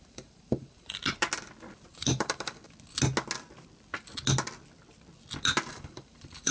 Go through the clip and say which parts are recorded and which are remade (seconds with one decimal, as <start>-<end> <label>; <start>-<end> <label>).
0.0-1.0 remade; 1.0-1.9 recorded; 1.9-2.6 remade; 2.6-5.7 recorded; 5.7-6.5 remade